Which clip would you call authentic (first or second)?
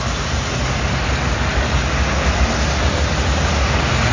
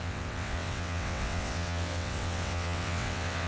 first